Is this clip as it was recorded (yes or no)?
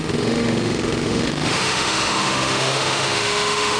no